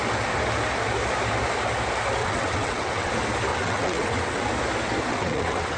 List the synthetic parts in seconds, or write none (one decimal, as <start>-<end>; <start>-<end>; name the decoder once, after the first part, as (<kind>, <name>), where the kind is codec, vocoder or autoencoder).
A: 2.2-3.1 (vocoder, WaveNeXt); 3.5-4.4; 5.1-5.8